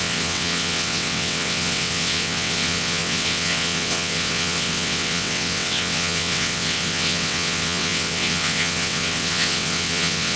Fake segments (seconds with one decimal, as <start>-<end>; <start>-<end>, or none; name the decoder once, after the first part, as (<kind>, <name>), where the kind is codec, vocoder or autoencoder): 0.0-10.4 (vocoder, WaveNeXt)